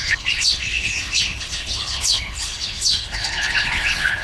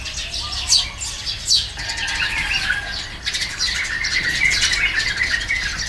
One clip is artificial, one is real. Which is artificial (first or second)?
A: first